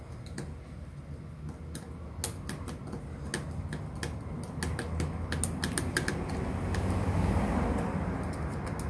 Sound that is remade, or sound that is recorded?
recorded